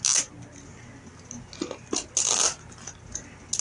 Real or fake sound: real